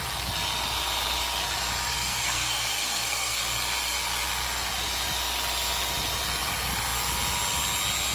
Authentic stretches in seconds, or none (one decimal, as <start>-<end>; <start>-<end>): 0.0-1.9; 3.4-8.1